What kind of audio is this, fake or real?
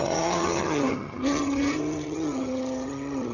fake